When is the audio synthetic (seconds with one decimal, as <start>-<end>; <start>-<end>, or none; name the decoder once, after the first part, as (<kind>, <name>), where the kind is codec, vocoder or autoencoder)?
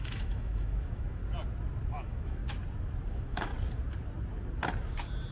0.0-1.2 (autoencoder, DAC-VAE); 1.9-2.4; 3.1-3.5